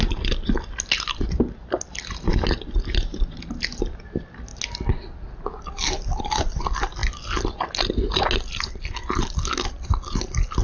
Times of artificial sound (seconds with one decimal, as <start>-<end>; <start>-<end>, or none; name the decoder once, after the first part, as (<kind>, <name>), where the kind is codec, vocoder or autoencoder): none